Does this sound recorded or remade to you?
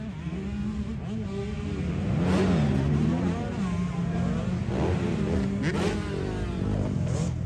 recorded